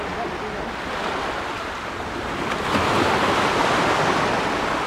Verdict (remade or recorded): recorded